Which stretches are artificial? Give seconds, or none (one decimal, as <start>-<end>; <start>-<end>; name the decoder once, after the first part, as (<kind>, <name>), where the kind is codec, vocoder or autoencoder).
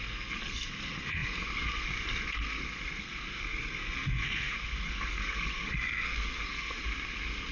0.0-7.5 (codec, SNAC)